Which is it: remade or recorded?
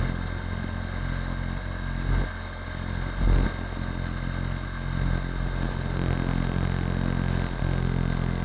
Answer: recorded